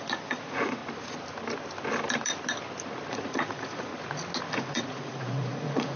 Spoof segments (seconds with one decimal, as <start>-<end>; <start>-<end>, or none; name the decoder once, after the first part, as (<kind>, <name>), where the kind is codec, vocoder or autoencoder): 0.0-0.8 (vocoder, Vocos); 3.1-3.9; 4.5-6.0